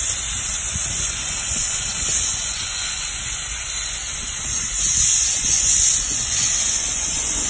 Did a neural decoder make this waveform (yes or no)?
yes